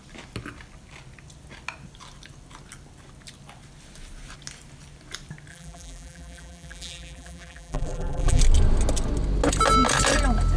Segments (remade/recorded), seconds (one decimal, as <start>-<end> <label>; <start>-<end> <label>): 0.0-5.5 recorded; 5.5-8.4 remade; 8.4-10.6 recorded